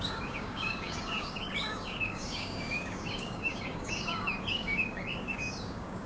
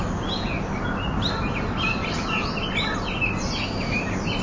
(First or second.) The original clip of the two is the second